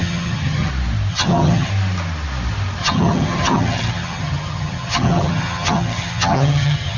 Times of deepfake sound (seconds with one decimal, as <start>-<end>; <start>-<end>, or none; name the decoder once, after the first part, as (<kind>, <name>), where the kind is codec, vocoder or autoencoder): 0.0-0.7 (vocoder, HiFi-GAN); 1.1-1.7; 2.8-7.0